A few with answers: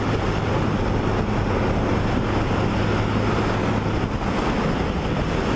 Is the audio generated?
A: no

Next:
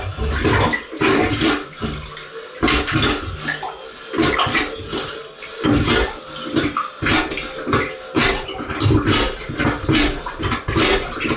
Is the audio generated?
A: no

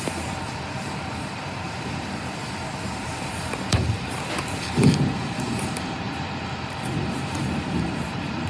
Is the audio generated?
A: yes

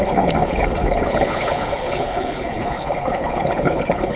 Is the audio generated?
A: yes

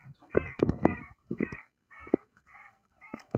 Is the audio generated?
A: yes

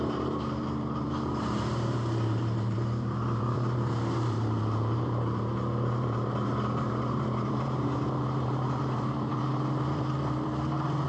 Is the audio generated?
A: yes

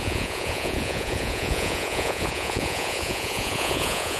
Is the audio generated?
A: yes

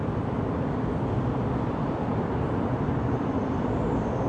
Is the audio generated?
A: yes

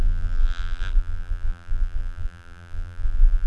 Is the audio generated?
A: yes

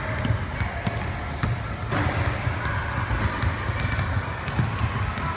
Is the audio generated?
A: no